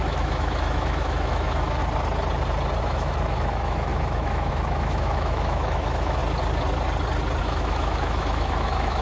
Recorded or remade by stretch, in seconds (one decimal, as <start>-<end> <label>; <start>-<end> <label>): 0.0-1.8 remade; 1.8-2.8 recorded; 2.8-6.2 remade; 6.2-7.4 recorded; 7.4-9.0 remade